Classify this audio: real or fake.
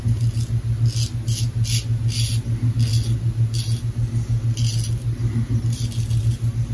real